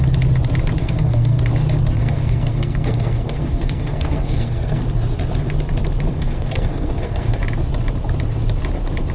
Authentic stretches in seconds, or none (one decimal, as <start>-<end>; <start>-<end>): 0.0-0.8; 1.4-2.0; 4.8-6.1; 7.4-9.1